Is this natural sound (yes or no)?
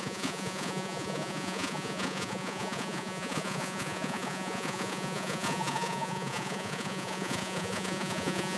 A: no